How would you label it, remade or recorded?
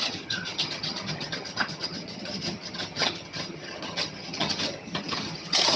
remade